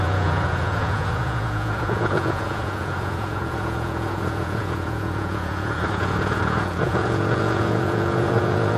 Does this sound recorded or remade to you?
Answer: remade